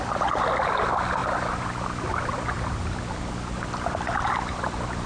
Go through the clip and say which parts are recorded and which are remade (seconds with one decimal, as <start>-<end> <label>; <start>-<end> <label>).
0.0-5.1 recorded